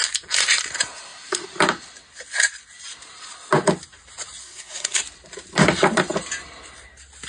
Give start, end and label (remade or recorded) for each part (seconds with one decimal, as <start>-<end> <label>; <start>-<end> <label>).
0.0-4.4 recorded; 4.4-5.0 remade; 5.0-7.3 recorded